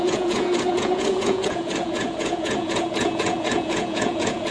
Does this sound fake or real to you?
fake